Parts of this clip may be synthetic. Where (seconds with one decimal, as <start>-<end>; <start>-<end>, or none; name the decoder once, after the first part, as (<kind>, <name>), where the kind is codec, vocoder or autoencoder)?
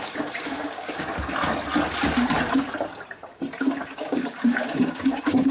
0.0-1.1 (codec, DAC); 3.6-5.5